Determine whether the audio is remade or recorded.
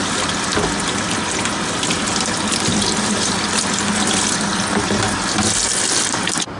recorded